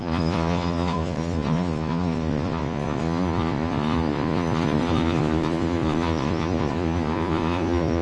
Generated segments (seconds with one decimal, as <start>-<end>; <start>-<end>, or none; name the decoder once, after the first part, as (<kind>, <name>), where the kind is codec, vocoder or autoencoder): 0.0-8.0 (vocoder, Vocos)